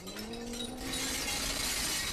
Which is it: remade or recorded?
recorded